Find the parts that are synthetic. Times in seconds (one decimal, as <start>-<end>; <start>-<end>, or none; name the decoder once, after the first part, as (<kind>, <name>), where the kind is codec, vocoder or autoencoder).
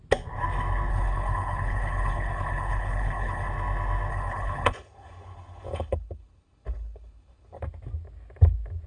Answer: 0.9-3.5 (codec, HILCodec); 4.1-7.6